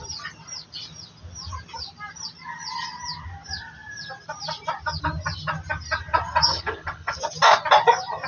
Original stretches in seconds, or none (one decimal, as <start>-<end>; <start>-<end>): 0.0-6.5; 7.2-8.3